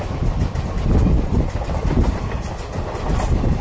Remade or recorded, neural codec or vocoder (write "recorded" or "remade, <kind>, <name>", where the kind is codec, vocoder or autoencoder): recorded